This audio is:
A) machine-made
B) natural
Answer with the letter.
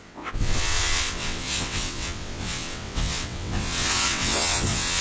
A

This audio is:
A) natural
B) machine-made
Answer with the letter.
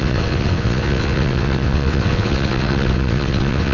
B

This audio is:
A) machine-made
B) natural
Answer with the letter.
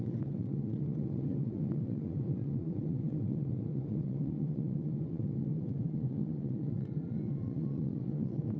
A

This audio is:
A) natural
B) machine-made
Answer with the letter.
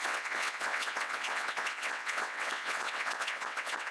B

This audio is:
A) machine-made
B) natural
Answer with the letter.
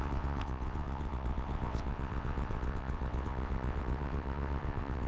A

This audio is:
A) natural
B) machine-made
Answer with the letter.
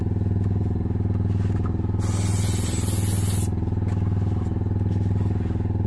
A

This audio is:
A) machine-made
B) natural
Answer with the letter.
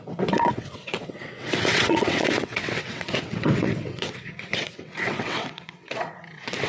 A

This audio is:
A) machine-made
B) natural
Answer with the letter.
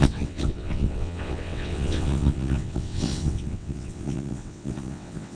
A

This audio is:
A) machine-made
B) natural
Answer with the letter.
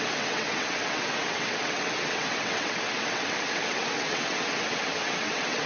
A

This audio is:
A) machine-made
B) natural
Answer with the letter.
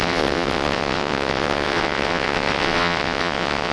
A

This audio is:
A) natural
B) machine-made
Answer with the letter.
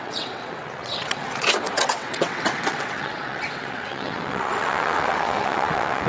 B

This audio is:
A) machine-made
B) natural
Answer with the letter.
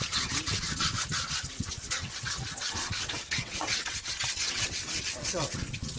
A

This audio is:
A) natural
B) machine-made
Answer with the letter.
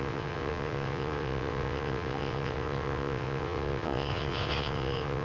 B